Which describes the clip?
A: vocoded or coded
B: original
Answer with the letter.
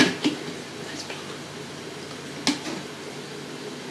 B